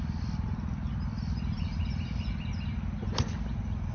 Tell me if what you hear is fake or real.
real